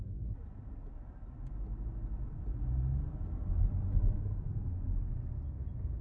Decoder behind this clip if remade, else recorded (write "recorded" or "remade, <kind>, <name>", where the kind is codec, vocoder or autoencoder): recorded